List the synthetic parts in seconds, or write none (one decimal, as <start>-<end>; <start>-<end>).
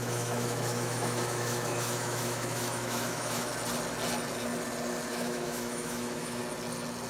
0.0-3.5; 5.1-6.4